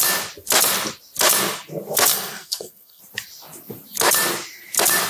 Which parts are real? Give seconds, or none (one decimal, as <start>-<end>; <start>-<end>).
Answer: 0.0-2.1; 3.0-5.1